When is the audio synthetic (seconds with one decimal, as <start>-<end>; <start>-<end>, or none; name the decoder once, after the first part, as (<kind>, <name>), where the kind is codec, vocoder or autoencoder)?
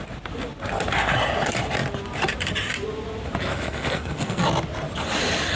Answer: 3.5-4.4 (codec, SNAC)